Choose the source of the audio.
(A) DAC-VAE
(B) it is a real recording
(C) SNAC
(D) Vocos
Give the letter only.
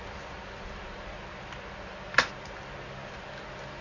B